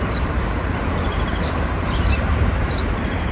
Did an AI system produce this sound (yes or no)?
yes